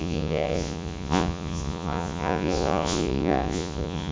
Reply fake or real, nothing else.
fake